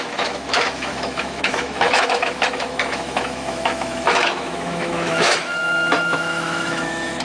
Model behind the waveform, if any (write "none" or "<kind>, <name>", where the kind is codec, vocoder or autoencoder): autoencoder, DAC-VAE